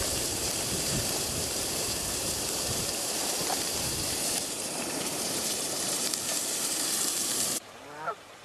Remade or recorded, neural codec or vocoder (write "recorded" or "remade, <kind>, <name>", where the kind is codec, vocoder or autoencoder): remade, vocoder, BigVGAN v2